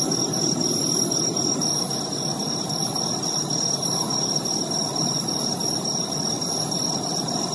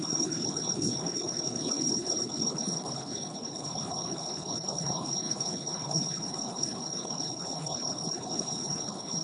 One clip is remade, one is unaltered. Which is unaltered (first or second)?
first